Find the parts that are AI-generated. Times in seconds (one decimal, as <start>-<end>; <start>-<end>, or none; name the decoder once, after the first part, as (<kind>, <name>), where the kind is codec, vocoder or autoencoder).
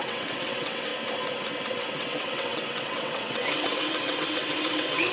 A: 0.0-0.9 (vocoder, WaveNeXt); 1.7-5.1